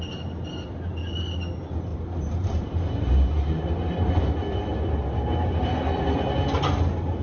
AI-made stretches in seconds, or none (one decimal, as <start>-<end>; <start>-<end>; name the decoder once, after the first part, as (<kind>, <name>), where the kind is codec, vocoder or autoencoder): 1.9-3.6 (vocoder, BigVGAN v2)